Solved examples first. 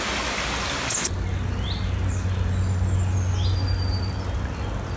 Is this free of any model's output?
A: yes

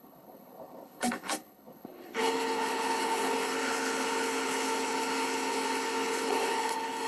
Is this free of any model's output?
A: no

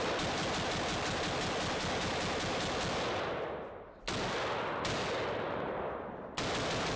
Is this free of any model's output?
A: yes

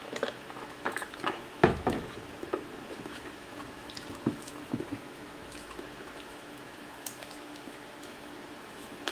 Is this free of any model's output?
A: no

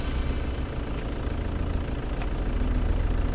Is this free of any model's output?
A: yes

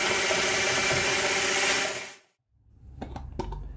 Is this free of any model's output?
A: yes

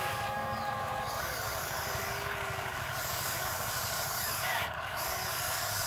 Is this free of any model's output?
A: no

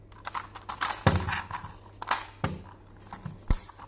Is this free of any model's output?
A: yes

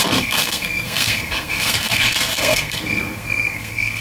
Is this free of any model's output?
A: no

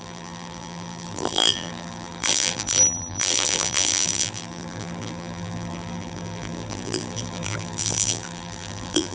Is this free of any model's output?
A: no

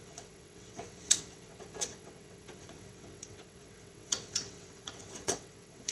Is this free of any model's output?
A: no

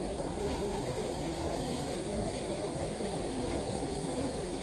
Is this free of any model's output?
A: no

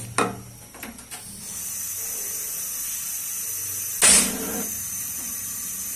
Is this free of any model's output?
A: yes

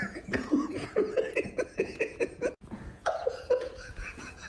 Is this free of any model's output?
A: no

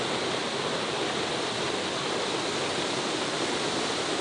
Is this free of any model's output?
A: yes